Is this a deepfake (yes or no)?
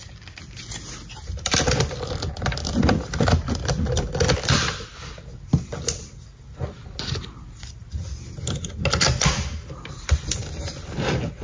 no